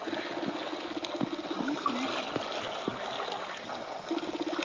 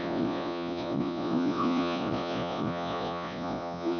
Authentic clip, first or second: first